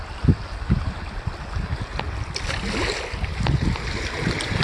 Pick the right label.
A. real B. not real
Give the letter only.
A